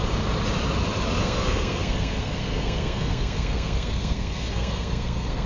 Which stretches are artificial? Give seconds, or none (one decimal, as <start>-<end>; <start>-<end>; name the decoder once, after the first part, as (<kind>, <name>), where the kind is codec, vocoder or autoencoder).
1.2-5.5 (codec, SNAC)